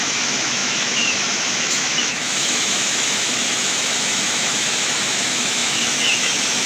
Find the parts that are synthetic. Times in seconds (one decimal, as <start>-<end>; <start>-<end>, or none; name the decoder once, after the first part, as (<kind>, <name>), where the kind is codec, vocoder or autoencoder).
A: 0.0-6.7 (autoencoder, DAC-VAE)